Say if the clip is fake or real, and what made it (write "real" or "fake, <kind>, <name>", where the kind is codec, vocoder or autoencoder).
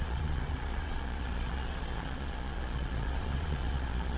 fake, vocoder, Vocos